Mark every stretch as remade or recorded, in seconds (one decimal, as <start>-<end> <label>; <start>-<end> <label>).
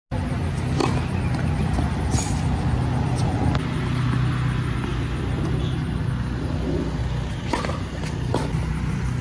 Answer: 0.0-9.2 recorded